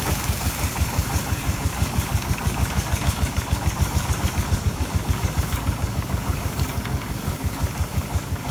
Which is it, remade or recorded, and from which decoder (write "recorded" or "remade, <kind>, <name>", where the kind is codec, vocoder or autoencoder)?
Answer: remade, codec, DAC